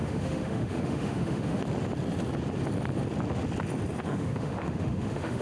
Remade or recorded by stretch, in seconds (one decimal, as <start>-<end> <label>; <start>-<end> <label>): 0.0-1.6 remade; 1.6-4.0 recorded; 4.0-5.4 remade